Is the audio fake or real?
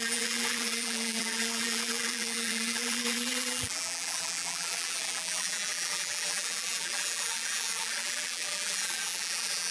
fake